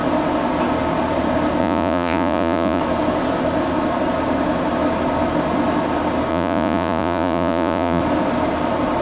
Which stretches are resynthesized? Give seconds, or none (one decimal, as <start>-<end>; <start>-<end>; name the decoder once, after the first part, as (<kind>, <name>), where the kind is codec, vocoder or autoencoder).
1.6-2.8 (vocoder, Vocos); 6.3-8.0